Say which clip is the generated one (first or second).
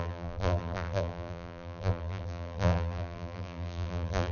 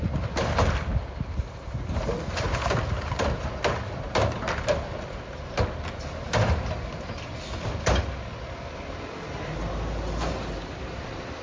first